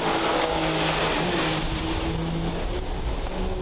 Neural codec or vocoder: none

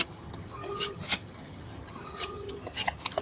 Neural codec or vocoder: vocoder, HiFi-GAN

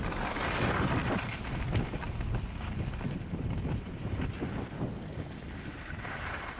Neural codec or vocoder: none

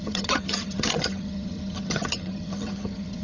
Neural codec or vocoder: vocoder, HiFi-GAN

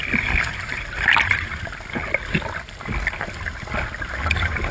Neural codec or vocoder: none